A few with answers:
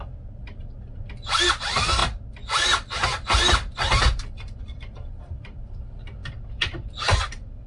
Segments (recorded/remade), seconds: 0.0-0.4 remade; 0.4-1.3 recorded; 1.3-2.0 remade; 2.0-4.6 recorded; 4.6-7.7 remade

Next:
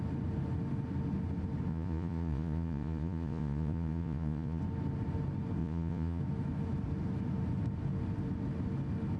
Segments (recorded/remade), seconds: 0.0-1.7 recorded; 1.7-4.6 remade; 4.6-5.6 recorded; 5.6-6.2 remade; 6.2-9.2 recorded

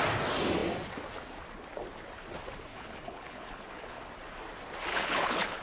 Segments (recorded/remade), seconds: 0.0-2.7 recorded; 2.7-4.0 remade; 4.0-4.9 recorded; 4.9-5.6 remade

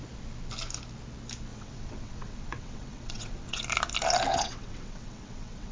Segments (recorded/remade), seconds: 0.0-1.5 recorded; 1.5-3.6 remade; 3.6-4.3 recorded; 4.3-5.7 remade